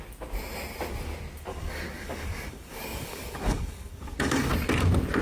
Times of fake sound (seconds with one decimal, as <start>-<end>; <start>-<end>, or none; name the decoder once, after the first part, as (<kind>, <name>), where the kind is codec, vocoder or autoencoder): 1.5-4.5 (codec, DAC)